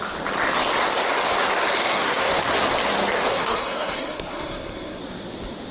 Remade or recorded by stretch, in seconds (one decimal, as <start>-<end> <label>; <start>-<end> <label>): 0.0-1.8 recorded; 1.8-2.3 remade; 2.3-3.3 recorded; 3.3-5.0 remade; 5.0-5.7 recorded